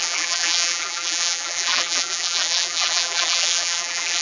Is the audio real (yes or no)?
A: no